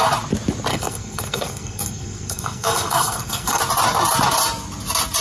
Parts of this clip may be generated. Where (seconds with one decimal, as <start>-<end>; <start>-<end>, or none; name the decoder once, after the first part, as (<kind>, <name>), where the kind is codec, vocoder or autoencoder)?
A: 0.7-3.6 (codec, SNAC)

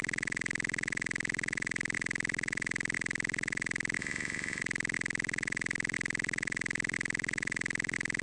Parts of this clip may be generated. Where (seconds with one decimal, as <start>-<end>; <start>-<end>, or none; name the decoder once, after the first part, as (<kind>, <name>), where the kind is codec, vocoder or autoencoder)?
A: 4.0-4.6 (vocoder, Vocos)

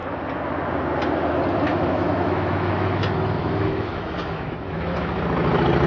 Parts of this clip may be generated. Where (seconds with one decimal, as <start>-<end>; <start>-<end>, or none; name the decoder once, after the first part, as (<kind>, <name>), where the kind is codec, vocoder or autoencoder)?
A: 1.7-5.2 (autoencoder, DAC-VAE)

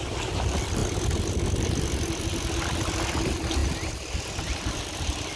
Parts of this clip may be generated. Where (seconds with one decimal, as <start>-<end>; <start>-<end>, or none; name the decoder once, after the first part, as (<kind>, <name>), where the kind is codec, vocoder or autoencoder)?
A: 0.0-0.8 (vocoder, BigVGAN v2); 2.2-3.6; 4.4-5.4

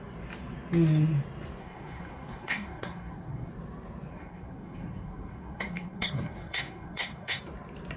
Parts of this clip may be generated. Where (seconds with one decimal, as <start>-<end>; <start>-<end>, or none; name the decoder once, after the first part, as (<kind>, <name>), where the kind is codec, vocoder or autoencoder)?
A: 1.6-3.5 (codec, SNAC); 4.1-7.4